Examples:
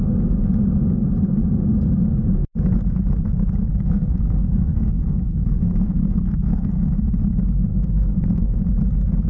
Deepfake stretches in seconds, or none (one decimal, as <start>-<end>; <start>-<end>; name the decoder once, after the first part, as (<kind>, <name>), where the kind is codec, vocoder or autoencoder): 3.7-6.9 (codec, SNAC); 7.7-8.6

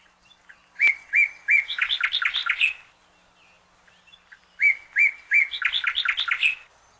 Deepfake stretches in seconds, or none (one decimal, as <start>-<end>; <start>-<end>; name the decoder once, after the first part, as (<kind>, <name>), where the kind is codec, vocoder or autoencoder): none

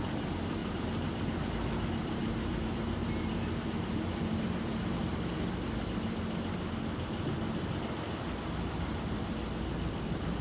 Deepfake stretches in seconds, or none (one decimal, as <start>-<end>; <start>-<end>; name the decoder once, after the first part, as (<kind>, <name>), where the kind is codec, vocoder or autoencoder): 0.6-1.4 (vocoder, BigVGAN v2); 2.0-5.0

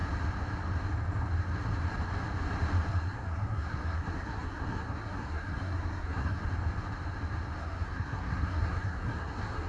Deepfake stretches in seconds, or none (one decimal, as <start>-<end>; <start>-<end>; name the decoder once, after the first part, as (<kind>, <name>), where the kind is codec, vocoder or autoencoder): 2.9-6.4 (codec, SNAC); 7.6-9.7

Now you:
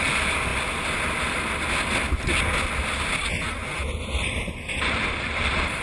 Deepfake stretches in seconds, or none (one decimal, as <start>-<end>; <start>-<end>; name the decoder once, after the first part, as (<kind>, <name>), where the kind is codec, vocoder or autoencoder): 0.0-0.5 (vocoder, BigVGAN v2); 4.0-5.8